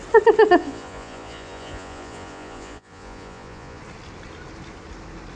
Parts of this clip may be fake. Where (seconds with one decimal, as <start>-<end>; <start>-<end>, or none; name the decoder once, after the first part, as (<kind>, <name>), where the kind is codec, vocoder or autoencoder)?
0.6-3.8 (vocoder, Vocos)